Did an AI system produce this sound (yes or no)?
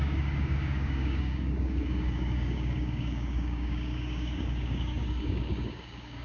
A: yes